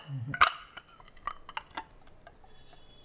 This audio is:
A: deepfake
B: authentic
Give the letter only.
B